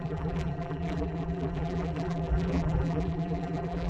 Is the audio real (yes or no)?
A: no